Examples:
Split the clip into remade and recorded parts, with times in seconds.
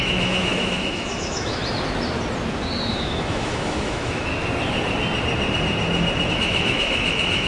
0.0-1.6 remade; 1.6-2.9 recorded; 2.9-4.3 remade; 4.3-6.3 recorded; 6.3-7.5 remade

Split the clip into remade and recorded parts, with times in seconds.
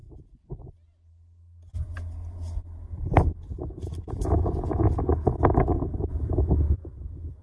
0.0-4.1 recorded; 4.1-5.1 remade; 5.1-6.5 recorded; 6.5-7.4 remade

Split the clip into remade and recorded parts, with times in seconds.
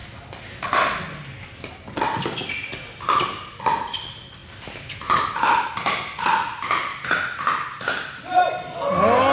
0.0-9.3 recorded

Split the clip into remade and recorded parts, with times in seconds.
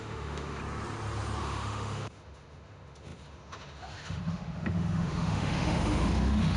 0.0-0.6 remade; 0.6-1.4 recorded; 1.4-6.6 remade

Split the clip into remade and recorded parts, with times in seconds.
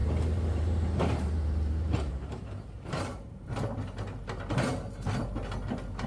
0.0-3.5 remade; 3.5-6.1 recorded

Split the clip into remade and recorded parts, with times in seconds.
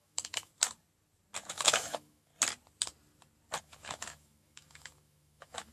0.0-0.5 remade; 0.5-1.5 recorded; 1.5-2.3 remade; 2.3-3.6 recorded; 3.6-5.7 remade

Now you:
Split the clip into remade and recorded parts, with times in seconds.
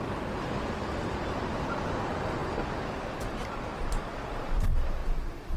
0.0-5.6 recorded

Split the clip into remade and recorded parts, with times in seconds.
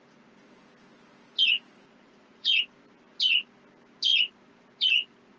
0.0-1.5 recorded; 1.5-2.6 remade; 2.6-5.4 recorded